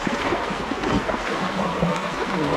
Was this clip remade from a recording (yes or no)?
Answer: yes